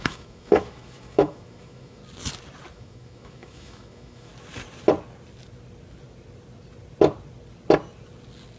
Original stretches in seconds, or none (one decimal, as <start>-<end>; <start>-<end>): 2.0-2.7; 4.3-8.6

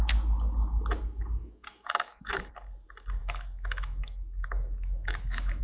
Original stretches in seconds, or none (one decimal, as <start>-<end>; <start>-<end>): 0.0-1.4; 2.5-3.2

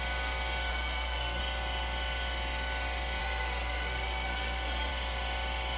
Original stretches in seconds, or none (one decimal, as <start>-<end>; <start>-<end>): 0.0-0.7; 1.4-3.2; 4.9-5.8